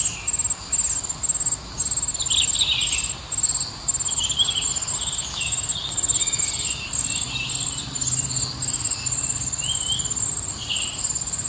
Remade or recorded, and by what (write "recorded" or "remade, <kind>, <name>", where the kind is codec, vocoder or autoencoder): recorded